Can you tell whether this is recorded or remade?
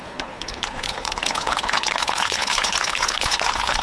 remade